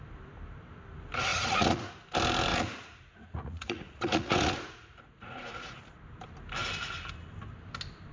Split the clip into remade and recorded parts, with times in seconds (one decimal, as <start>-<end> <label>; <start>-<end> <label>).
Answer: 0.0-1.3 recorded; 1.3-1.9 remade; 1.9-2.5 recorded; 2.5-5.8 remade; 5.8-8.1 recorded